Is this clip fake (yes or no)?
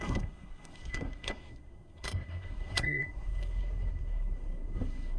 yes